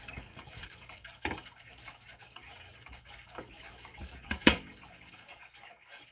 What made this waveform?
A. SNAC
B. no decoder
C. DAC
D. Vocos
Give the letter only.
C